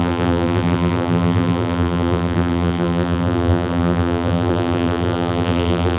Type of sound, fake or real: fake